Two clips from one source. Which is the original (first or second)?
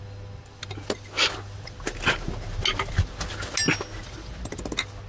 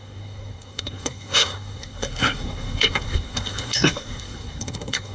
first